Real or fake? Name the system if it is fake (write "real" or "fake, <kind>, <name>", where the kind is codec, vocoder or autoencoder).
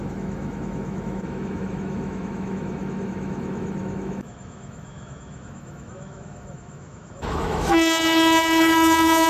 fake, autoencoder, DAC-VAE